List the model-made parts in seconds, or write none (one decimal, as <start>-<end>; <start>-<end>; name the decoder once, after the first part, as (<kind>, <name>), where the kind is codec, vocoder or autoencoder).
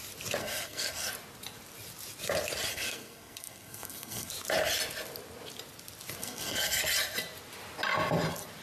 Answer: 0.4-1.1 (codec, SNAC); 2.7-4.3; 6.2-6.8